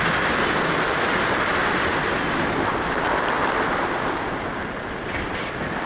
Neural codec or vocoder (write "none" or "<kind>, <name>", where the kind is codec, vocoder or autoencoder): none